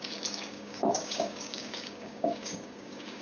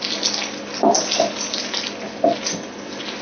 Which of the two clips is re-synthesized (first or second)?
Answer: first